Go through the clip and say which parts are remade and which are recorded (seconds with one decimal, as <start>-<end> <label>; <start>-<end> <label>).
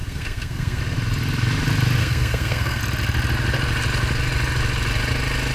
0.0-0.8 remade; 0.8-2.0 recorded; 2.0-2.8 remade; 2.8-5.5 recorded